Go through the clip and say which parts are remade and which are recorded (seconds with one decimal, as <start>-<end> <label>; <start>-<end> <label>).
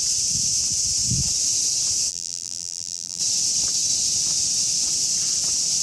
0.0-2.1 recorded; 2.1-3.2 remade; 3.2-5.8 recorded